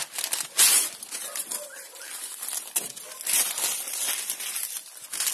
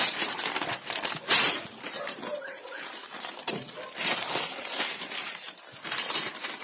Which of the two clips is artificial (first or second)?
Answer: second